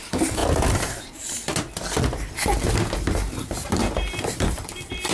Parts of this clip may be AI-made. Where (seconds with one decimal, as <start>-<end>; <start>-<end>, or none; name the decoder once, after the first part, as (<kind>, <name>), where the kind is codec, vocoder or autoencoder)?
0.0-1.5 (vocoder, BigVGAN v2); 3.7-5.1

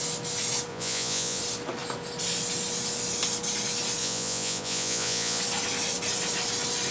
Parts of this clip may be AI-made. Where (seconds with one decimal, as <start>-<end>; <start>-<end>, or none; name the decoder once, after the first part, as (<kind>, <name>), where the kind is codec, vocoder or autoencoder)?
0.7-1.4 (vocoder, Vocos); 4.0-5.4

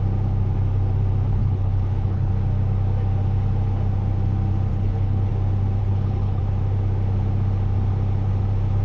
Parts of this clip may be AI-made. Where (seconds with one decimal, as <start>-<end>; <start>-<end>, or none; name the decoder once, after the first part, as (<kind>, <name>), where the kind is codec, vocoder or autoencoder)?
1.3-2.3 (codec, HILCodec); 4.7-5.3; 5.8-6.4

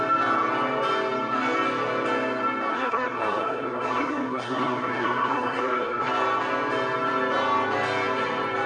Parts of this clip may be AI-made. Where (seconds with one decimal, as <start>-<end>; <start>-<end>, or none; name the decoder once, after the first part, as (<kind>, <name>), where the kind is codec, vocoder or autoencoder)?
2.7-6.1 (codec, SNAC)

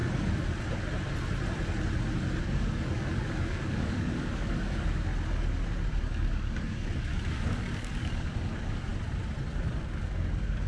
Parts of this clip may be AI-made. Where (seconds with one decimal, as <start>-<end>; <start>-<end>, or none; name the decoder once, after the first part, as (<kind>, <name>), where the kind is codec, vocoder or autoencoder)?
2.4-5.1 (codec, DAC); 6.0-8.9; 9.6-10.7

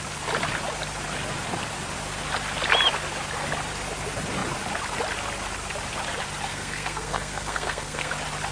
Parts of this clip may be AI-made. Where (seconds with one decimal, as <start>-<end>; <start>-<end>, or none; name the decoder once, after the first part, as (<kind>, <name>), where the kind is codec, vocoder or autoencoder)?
6.5-8.1 (codec, SNAC)